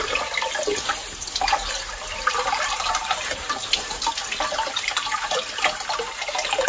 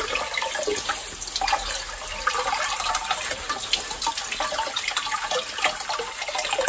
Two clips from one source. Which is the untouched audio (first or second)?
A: second